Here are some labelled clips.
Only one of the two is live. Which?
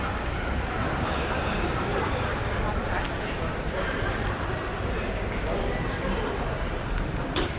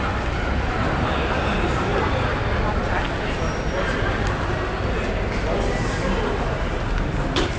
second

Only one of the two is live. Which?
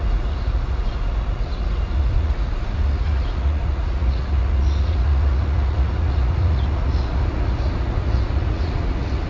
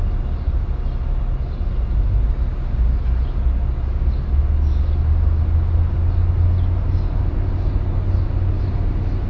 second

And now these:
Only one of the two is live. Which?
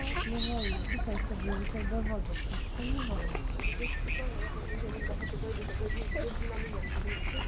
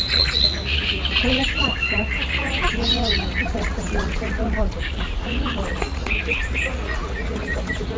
first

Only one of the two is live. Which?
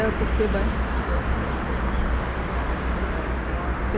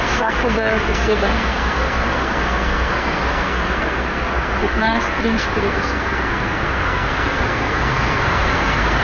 first